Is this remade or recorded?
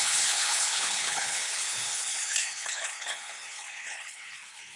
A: remade